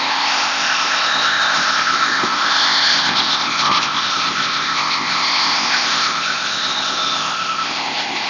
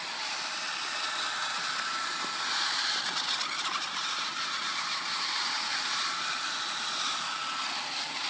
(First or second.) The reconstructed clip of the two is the first